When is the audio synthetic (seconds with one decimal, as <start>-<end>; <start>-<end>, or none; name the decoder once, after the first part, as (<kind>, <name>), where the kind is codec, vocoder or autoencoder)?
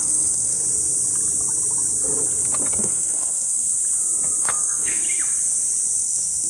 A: 0.0-0.6 (codec, SNAC); 2.8-3.7; 4.4-5.0; 6.0-6.5